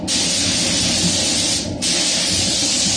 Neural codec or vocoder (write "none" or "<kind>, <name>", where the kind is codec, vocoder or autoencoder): none